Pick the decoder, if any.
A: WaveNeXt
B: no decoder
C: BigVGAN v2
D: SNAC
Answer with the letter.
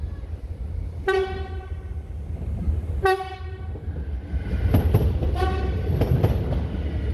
B